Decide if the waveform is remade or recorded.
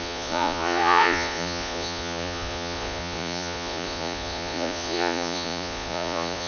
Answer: remade